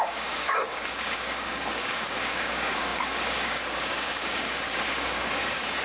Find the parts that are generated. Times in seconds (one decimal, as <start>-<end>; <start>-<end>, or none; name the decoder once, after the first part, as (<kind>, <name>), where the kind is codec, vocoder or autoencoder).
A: 0.0-5.8 (codec, DAC)